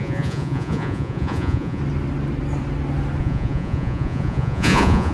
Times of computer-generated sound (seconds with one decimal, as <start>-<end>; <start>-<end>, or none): 0.0-1.8; 3.2-5.1